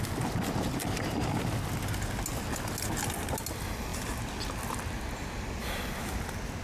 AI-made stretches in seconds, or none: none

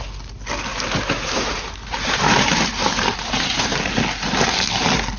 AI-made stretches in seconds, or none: 0.7-3.8 (vocoder, BigVGAN v2)